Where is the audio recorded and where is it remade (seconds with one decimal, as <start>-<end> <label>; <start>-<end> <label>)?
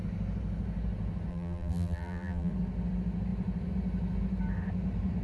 0.0-1.3 recorded; 1.3-2.5 remade; 2.5-5.2 recorded